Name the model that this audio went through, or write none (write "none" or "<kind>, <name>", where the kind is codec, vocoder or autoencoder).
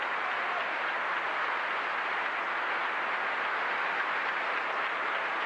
none